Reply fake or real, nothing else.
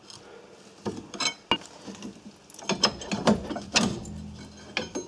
real